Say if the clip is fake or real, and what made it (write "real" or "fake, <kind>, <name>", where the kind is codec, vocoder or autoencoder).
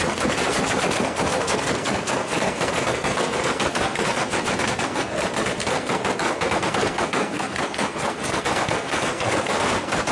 fake, codec, SNAC